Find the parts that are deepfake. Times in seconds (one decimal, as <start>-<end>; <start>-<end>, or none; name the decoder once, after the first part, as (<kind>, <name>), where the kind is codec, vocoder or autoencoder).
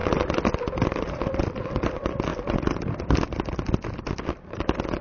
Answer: 0.0-1.6 (vocoder, BigVGAN v2); 2.3-4.3